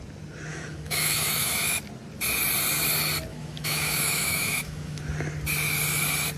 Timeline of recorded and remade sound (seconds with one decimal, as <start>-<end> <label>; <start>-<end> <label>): 0.0-0.5 recorded; 0.5-1.8 remade; 1.8-3.3 recorded; 3.3-5.0 remade; 5.0-6.4 recorded